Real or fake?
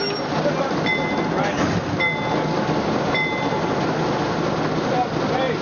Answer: real